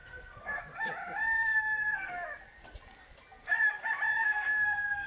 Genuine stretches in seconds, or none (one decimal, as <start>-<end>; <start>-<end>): 0.6-1.5; 2.1-4.2

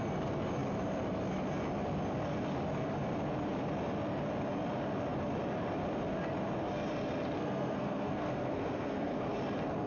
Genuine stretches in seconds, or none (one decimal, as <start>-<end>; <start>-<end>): 0.0-7.4; 9.2-9.9

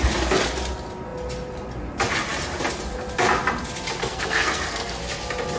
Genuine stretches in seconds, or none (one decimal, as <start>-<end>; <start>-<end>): 0.0-4.0; 5.0-5.6

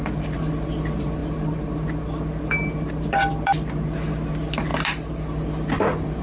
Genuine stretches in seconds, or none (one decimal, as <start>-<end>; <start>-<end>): 0.0-6.2

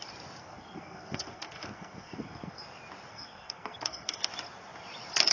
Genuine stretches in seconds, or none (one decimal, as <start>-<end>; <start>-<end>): 0.0-0.4; 2.6-3.1; 4.3-5.3

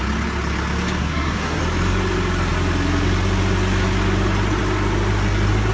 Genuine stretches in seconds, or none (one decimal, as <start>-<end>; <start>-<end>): 0.0-1.0; 1.6-5.7

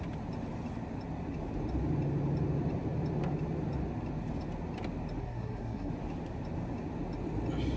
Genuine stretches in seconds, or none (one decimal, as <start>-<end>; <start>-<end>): 0.0-5.2; 5.9-7.8

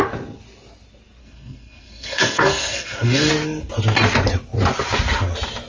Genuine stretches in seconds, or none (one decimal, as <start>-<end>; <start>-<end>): 0.0-1.2; 3.3-5.7